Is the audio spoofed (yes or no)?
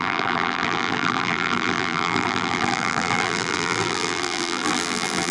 yes